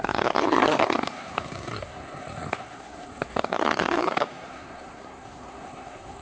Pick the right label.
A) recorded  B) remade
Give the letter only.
B